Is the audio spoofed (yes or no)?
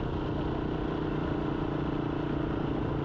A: no